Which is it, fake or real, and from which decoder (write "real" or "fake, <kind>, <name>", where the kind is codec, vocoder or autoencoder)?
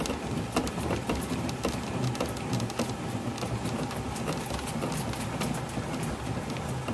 real